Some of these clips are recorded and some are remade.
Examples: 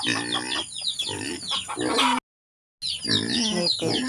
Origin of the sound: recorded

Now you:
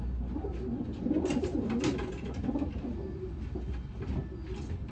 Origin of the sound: recorded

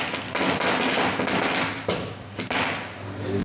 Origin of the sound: recorded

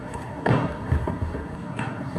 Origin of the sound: remade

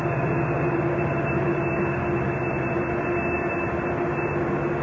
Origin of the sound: recorded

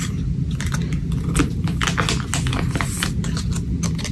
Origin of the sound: recorded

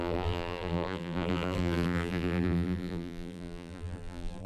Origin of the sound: remade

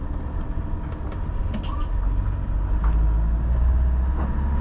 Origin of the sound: recorded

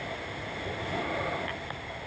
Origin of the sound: recorded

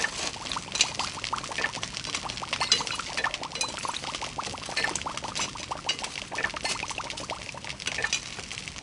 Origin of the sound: recorded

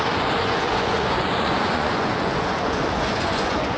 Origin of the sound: remade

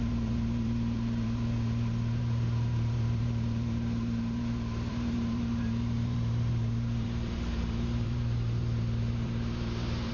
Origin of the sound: remade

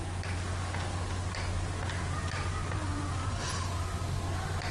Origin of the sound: recorded